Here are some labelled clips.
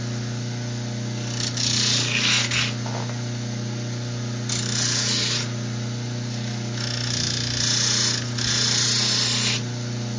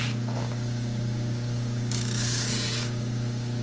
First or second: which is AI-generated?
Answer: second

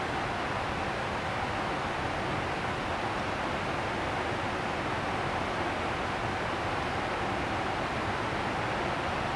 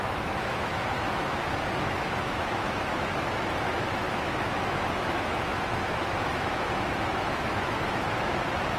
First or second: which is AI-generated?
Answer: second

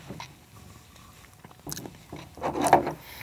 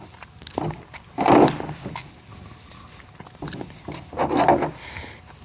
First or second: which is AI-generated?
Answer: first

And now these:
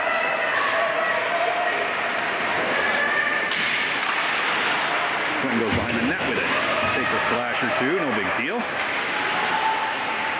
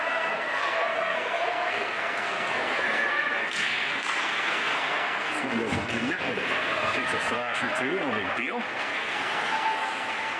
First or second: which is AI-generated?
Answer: second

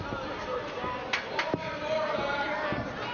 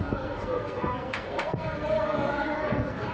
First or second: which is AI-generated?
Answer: second